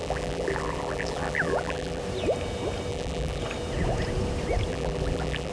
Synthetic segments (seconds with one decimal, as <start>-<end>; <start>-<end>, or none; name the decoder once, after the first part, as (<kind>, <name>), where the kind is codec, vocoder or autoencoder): 0.0-2.0 (vocoder, BigVGAN v2); 2.9-3.4; 4.7-5.5

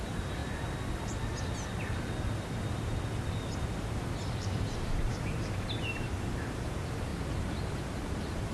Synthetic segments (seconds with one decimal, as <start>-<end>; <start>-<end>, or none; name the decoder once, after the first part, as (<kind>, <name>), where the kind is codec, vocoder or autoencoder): 0.0-0.4 (vocoder, BigVGAN v2); 4.3-7.1; 7.8-8.5

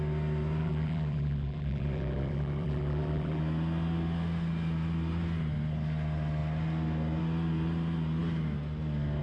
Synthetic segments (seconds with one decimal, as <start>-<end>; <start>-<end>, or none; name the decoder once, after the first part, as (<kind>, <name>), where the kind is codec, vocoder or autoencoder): 0.6-3.4 (vocoder, BigVGAN v2)